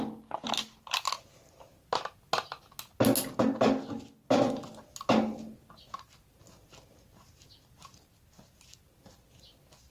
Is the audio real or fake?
real